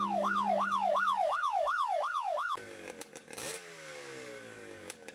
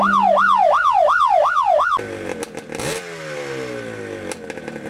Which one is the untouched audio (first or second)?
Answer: second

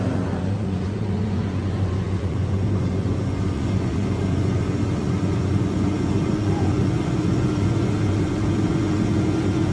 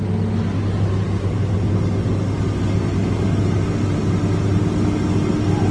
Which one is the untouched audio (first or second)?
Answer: second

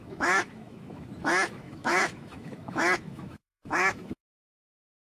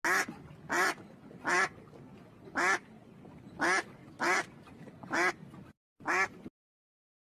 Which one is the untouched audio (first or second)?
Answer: second